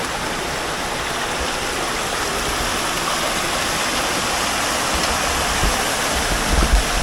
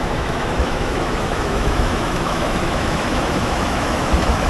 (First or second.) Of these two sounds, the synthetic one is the second